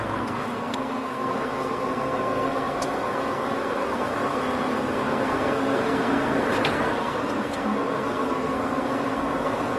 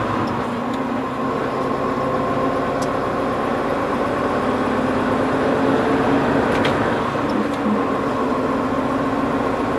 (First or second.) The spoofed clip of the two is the first